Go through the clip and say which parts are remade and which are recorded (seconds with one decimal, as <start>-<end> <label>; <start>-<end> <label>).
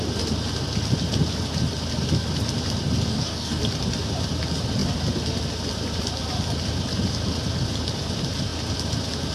0.0-3.1 recorded; 3.1-3.6 remade; 3.6-9.3 recorded